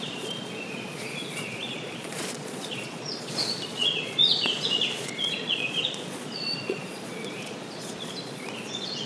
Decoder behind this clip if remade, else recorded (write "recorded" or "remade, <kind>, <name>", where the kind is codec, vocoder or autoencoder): remade, vocoder, Vocos